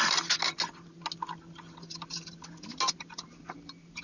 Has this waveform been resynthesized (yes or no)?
no